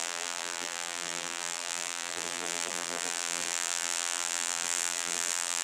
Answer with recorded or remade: remade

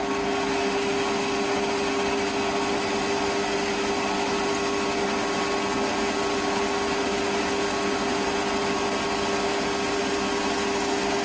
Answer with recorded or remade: recorded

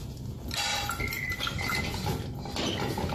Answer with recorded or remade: recorded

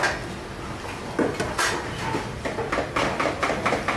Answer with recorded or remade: recorded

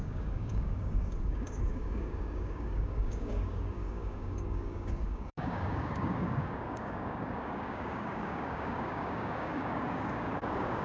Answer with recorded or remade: remade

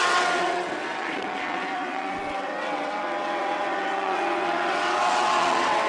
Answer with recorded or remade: remade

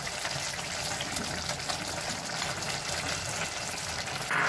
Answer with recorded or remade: remade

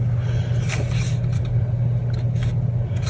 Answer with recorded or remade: recorded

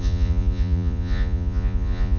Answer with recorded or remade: remade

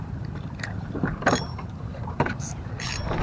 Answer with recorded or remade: remade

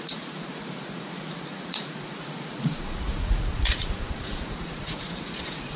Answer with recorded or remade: remade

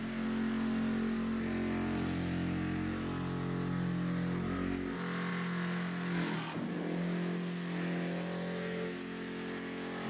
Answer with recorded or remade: recorded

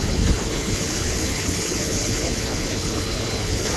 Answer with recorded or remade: remade